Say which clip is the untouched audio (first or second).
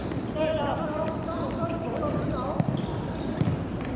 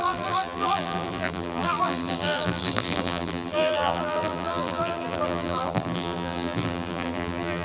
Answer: first